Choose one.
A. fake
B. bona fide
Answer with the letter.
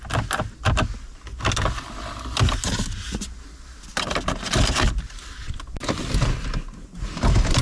B